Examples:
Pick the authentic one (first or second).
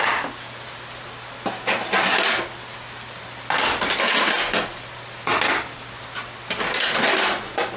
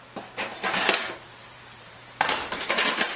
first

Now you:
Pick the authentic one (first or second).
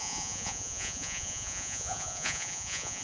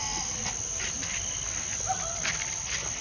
second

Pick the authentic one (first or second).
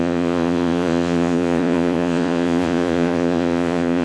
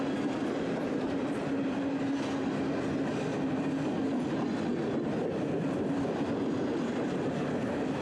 second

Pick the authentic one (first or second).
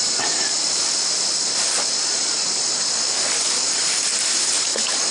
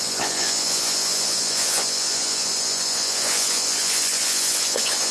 first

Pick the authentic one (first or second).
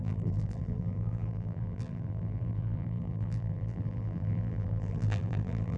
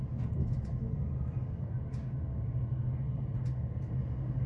second